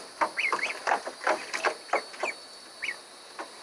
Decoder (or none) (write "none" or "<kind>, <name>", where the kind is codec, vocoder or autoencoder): none